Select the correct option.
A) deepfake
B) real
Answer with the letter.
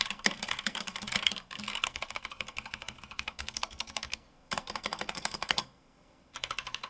A